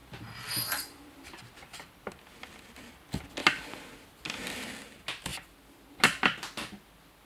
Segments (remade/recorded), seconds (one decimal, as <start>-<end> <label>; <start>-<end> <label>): 0.0-1.4 remade; 1.4-7.3 recorded